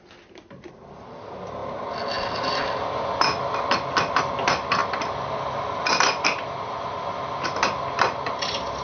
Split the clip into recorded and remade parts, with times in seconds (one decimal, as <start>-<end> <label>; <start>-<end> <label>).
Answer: 0.0-8.8 recorded